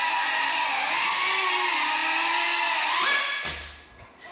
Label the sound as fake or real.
real